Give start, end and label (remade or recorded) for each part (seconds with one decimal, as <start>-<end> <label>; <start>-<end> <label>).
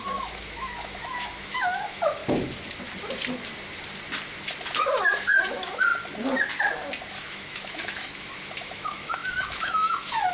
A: 0.0-2.2 remade; 2.2-4.8 recorded; 4.8-5.9 remade; 5.9-7.1 recorded; 7.1-10.3 remade